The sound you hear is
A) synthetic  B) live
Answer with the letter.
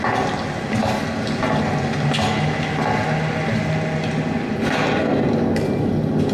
B